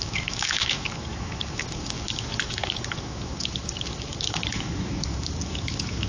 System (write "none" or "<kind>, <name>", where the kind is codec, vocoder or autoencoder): autoencoder, DAC-VAE